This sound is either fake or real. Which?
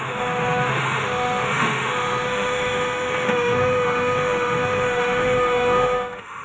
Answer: fake